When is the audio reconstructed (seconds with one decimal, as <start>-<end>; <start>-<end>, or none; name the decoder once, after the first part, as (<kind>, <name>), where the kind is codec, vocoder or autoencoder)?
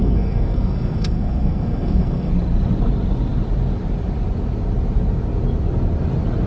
0.0-2.3 (codec, SNAC)